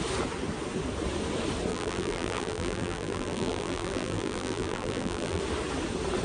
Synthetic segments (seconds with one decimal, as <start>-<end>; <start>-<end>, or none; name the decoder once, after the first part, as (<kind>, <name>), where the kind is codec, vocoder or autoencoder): 1.7-5.4 (vocoder, BigVGAN v2)